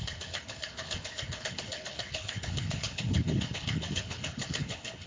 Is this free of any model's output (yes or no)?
no